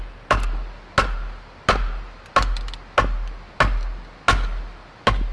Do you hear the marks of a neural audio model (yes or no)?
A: no